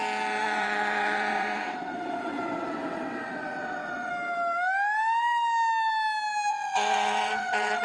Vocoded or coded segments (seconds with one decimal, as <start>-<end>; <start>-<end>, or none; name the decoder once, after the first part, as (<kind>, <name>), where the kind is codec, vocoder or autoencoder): 0.4-4.1 (vocoder, WaveNeXt); 6.5-7.8

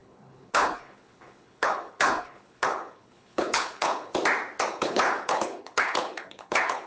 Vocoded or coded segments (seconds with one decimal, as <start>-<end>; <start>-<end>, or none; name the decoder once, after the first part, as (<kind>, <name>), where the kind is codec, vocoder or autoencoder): 0.0-4.1 (codec, HILCodec); 4.7-6.9